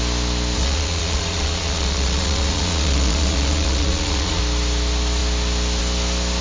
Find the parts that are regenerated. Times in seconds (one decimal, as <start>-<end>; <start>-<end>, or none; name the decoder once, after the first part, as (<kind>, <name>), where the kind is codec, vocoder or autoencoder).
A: 0.6-4.4 (vocoder, Vocos)